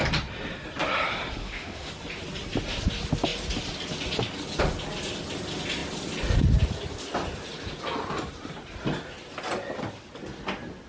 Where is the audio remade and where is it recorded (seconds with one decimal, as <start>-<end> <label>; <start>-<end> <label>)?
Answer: 0.0-1.4 recorded; 1.4-1.9 remade; 1.9-10.9 recorded